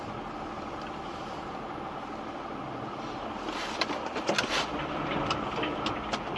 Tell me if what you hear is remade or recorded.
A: recorded